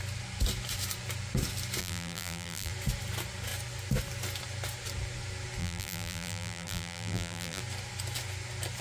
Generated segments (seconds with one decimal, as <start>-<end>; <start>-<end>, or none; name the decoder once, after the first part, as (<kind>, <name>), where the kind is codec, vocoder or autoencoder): 1.8-2.7 (vocoder, BigVGAN v2); 5.6-7.6